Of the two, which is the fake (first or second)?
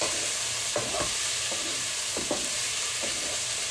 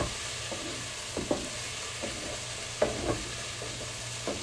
first